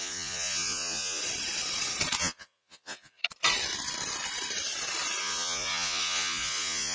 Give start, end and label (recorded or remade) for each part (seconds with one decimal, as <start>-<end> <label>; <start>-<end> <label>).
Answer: 0.0-1.2 remade; 1.2-2.2 recorded; 2.2-3.2 remade; 3.2-5.2 recorded; 5.2-6.9 remade